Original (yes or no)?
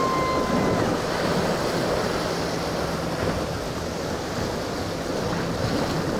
yes